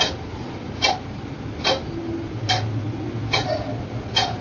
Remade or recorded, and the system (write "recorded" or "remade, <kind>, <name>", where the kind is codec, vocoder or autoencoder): recorded